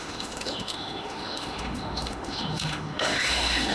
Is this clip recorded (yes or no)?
no